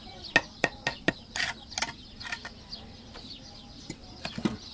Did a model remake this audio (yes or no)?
no